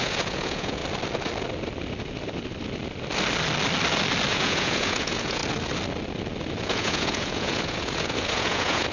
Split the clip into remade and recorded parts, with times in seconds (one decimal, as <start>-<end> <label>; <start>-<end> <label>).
0.0-0.8 remade; 0.8-4.3 recorded; 4.3-5.4 remade; 5.4-6.6 recorded; 6.6-8.9 remade